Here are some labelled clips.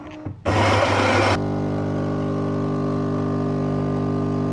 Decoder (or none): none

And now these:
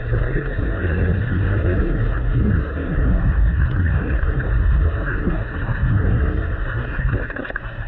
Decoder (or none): codec, SNAC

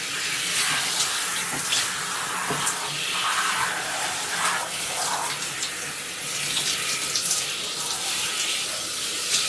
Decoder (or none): none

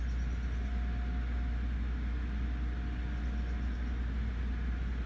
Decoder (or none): none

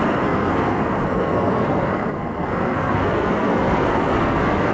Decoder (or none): codec, SNAC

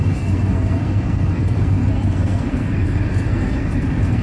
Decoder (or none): codec, SNAC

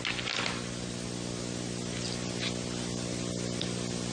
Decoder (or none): none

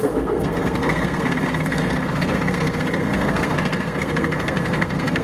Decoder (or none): codec, SNAC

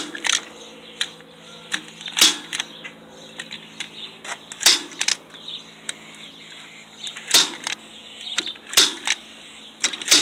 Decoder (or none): none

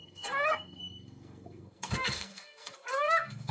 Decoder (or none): codec, SNAC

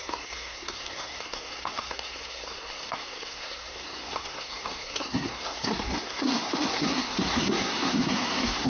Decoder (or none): codec, SNAC